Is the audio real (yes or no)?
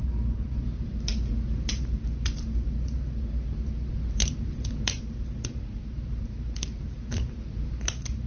no